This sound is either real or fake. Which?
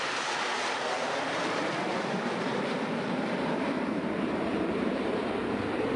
fake